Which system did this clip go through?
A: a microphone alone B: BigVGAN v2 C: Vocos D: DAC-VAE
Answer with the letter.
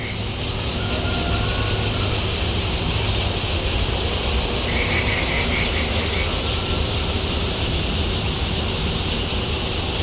A